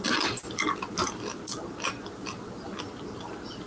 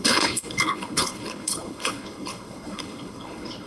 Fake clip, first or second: second